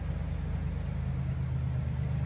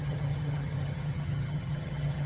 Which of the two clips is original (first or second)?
first